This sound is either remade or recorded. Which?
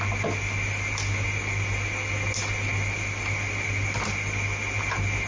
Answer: recorded